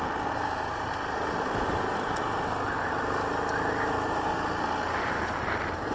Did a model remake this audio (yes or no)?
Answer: no